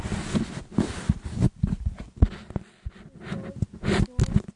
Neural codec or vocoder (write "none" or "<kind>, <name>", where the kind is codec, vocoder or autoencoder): none